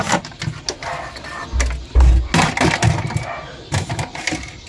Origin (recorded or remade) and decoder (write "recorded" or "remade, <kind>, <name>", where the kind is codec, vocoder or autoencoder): recorded